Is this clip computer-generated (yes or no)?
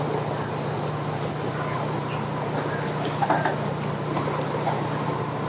no